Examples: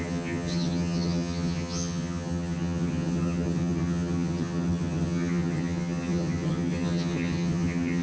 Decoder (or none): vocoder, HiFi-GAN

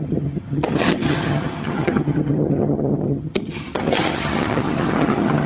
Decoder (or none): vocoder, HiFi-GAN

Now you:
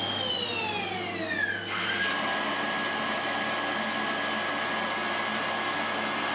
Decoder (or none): none